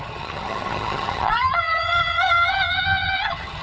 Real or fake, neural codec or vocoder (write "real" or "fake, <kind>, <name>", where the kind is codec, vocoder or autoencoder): fake, vocoder, HiFi-GAN